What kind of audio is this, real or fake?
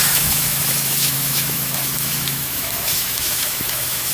fake